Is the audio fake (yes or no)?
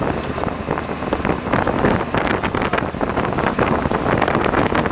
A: no